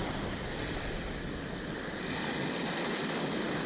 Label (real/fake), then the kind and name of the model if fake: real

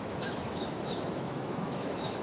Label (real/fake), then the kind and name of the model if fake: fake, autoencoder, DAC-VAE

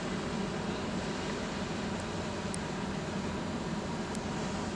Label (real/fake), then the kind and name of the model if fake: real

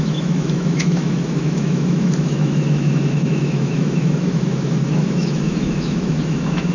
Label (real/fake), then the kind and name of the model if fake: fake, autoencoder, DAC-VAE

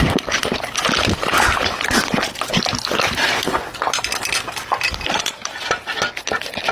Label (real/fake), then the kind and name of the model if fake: real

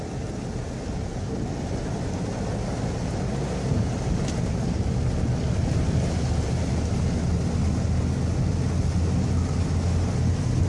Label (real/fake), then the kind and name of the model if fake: real